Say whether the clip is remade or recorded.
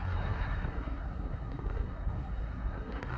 remade